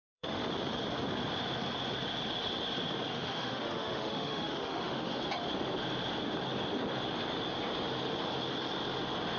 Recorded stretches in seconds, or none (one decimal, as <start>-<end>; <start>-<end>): 0.4-3.1; 5.1-9.4